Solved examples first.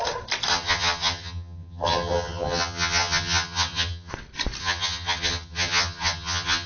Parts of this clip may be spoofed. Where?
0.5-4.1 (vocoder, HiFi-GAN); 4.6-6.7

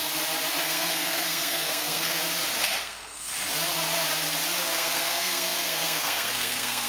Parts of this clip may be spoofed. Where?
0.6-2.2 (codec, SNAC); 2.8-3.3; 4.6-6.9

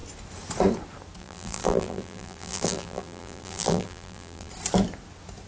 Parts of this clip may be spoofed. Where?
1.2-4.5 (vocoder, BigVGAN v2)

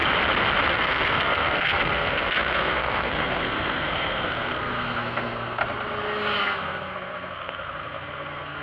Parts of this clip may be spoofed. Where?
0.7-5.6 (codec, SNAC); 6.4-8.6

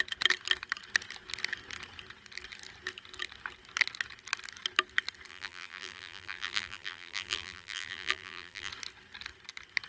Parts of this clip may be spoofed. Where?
5.3-8.7 (vocoder, BigVGAN v2)

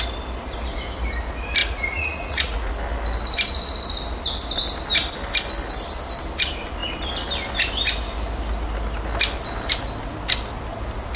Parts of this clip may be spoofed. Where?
1.6-2.7 (vocoder, Vocos)